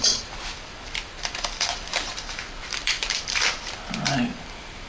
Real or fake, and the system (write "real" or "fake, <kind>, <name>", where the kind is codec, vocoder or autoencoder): fake, vocoder, BigVGAN v2